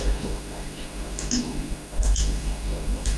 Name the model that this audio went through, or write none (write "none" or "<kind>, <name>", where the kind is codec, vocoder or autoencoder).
autoencoder, DAC-VAE